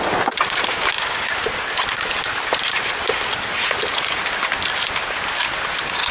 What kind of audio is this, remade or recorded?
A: recorded